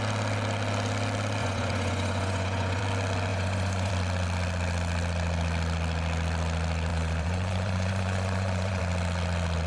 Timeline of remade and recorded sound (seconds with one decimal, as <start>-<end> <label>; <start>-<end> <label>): 0.0-1.4 recorded; 1.4-2.8 remade; 2.8-3.3 recorded; 3.3-3.9 remade; 3.9-6.9 recorded; 6.9-8.8 remade; 8.8-9.7 recorded